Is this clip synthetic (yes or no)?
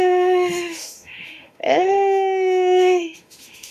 yes